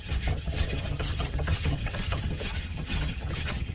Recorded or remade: remade